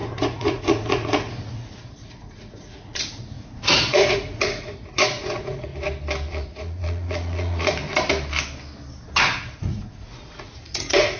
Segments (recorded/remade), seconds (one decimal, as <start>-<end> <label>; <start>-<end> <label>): 0.0-5.7 remade; 5.7-6.3 recorded; 6.3-7.8 remade; 7.8-9.2 recorded; 9.2-11.2 remade